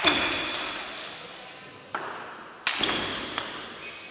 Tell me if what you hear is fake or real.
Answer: real